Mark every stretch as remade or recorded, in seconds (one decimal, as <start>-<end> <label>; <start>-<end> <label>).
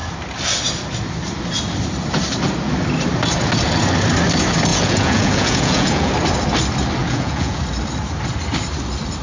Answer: 0.0-4.7 recorded; 4.7-6.1 remade; 6.1-7.0 recorded; 7.0-7.6 remade; 7.6-9.2 recorded